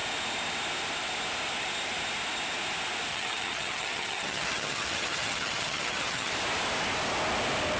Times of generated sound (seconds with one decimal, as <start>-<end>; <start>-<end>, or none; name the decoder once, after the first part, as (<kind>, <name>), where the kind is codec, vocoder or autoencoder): 3.1-6.3 (vocoder, HiFi-GAN)